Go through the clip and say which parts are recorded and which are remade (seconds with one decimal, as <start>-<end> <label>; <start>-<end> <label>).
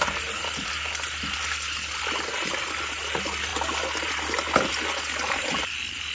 0.0-6.1 recorded